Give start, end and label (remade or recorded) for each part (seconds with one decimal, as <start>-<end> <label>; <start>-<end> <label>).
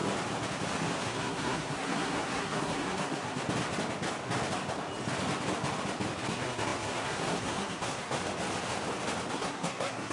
0.0-1.0 recorded; 1.0-3.4 remade; 3.4-6.3 recorded; 6.3-8.2 remade; 8.2-9.3 recorded; 9.3-10.1 remade